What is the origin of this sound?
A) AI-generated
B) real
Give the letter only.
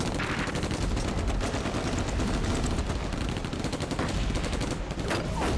B